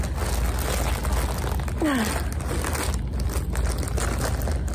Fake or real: real